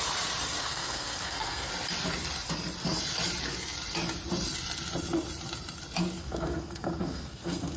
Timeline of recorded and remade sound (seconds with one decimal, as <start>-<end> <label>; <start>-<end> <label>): 0.0-0.6 recorded; 0.6-1.7 remade; 1.7-6.2 recorded; 6.2-7.8 remade